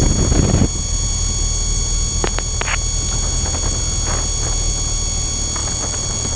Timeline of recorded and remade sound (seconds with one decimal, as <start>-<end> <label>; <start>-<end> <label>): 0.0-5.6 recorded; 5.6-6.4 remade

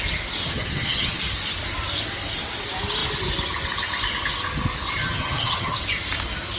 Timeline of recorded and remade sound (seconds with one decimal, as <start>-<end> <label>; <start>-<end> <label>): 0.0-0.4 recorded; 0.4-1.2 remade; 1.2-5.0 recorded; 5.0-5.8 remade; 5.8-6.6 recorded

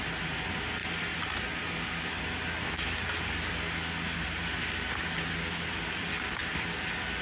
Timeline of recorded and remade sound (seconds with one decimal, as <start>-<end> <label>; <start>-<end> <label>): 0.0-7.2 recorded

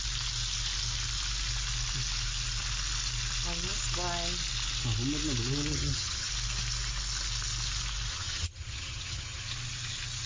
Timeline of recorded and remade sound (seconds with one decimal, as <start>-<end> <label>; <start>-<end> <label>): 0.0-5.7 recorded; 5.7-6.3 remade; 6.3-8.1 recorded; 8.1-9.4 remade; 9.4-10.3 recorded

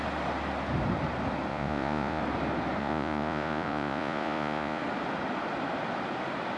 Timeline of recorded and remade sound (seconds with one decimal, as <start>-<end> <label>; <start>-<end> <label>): 0.0-1.5 recorded; 1.5-2.2 remade; 2.2-2.8 recorded; 2.8-4.8 remade; 4.8-6.6 recorded